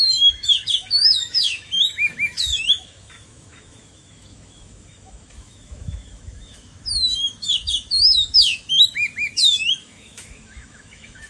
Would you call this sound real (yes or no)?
no